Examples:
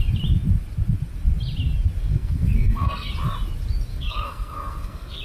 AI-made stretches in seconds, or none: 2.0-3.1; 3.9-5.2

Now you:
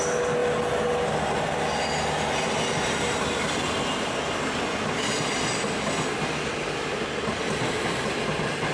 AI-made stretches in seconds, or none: none

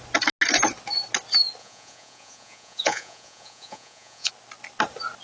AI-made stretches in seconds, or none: 1.6-4.3

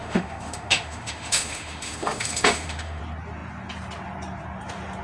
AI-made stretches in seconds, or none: 0.0-3.0

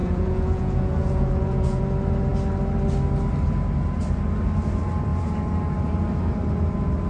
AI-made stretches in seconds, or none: 0.0-1.8